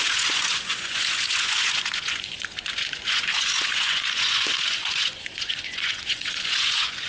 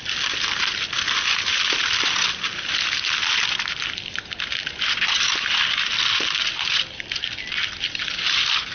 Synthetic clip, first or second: first